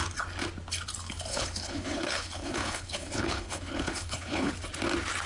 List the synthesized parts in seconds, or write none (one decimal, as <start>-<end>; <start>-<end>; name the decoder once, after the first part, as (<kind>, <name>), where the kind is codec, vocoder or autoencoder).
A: 1.3-4.5 (codec, HILCodec)